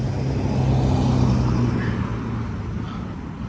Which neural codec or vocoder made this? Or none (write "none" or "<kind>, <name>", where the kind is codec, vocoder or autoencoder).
none